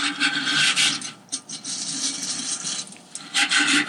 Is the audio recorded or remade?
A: recorded